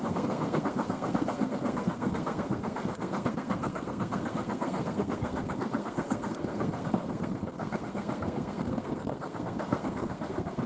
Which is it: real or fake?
fake